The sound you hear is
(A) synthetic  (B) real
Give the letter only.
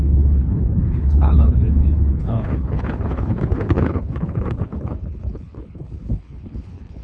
A